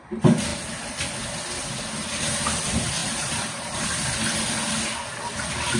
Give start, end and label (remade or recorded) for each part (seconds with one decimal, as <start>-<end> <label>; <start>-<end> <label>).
0.0-3.0 recorded; 3.0-3.8 remade; 3.8-5.8 recorded